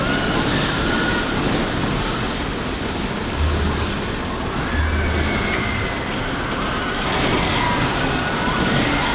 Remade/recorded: recorded